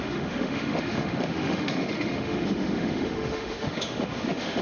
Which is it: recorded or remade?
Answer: remade